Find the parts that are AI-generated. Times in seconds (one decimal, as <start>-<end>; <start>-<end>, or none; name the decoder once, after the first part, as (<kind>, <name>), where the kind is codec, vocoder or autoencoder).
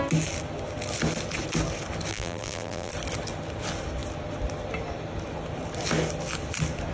2.1-2.9 (vocoder, BigVGAN v2)